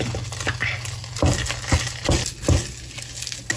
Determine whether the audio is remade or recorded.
recorded